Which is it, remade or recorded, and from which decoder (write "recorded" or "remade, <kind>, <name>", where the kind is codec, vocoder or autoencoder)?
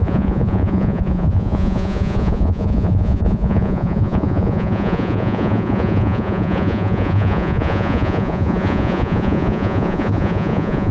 remade, vocoder, Vocos